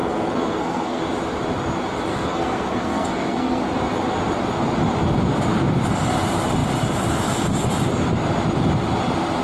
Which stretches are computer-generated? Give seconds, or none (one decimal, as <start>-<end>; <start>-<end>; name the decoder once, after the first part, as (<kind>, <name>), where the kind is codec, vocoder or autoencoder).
0.0-1.0 (codec, SNAC); 2.1-3.6